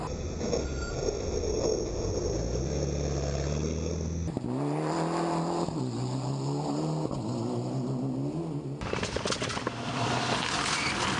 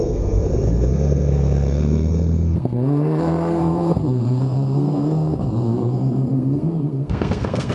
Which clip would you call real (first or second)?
first